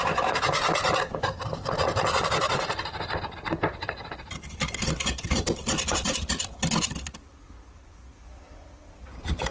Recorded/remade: recorded